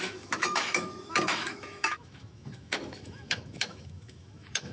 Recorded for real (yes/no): no